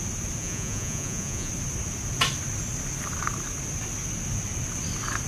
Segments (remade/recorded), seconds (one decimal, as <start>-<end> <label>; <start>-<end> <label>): 0.0-0.4 recorded; 0.4-1.5 remade; 1.5-5.3 recorded